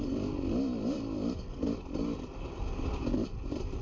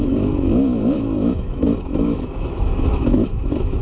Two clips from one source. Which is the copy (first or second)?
second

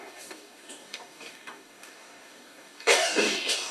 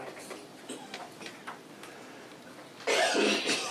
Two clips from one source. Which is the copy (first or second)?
first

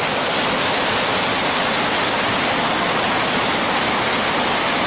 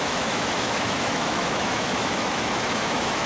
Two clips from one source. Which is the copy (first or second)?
second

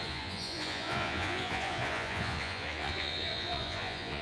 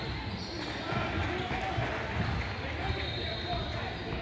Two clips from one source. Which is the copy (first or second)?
first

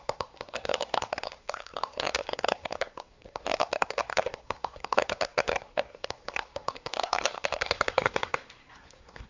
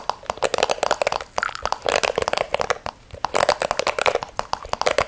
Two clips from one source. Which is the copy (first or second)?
first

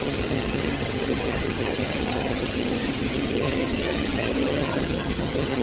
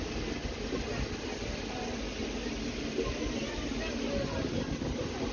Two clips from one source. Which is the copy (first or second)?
first